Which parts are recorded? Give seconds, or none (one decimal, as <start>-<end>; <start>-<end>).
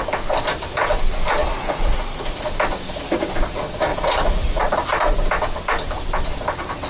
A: 0.0-1.4; 2.4-3.9; 4.6-6.9